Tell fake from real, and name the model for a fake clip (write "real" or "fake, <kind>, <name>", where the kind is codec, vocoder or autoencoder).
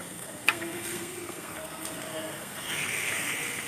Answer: fake, codec, SNAC